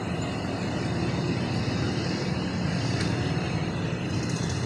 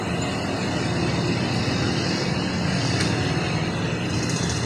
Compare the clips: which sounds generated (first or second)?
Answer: first